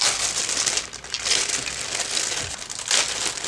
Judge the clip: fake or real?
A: real